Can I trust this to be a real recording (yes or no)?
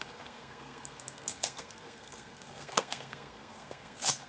no